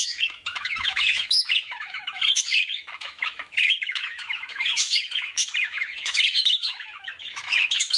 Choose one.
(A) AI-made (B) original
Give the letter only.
A